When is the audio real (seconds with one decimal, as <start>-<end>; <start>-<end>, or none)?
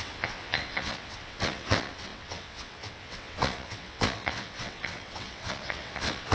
none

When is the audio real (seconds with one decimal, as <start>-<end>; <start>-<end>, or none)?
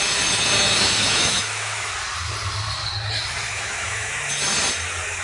0.0-1.0; 1.9-3.5; 4.1-5.2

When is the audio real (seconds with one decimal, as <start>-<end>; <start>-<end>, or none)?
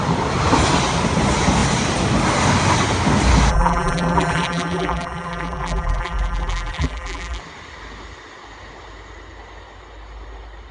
0.0-3.5; 7.4-10.7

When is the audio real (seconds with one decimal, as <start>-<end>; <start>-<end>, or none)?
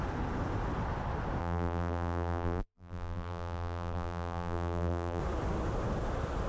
0.0-1.4; 5.2-6.5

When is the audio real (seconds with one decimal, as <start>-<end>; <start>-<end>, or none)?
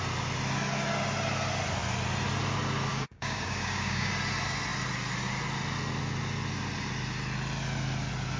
0.0-2.9; 4.1-8.4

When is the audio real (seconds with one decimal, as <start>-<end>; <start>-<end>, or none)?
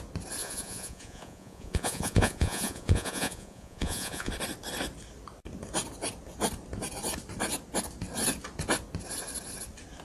0.0-0.4; 4.3-10.0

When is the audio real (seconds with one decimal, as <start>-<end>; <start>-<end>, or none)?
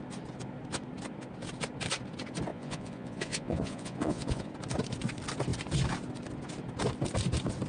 0.0-2.5; 4.5-7.7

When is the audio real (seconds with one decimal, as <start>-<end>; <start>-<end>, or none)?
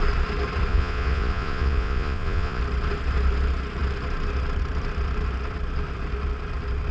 0.0-0.7; 2.6-6.9